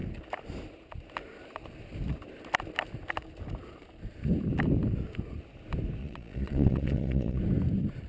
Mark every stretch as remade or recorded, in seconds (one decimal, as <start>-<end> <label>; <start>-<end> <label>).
0.0-6.0 recorded; 6.0-7.4 remade; 7.4-8.1 recorded